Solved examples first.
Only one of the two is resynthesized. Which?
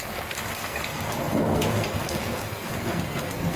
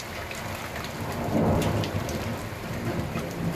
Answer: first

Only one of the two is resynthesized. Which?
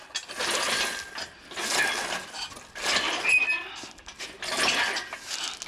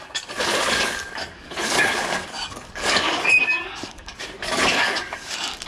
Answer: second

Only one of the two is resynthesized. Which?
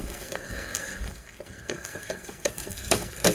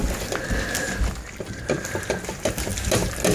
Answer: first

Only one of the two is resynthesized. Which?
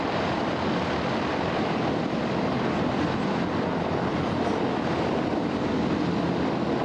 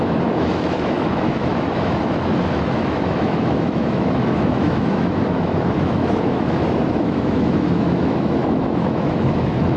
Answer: second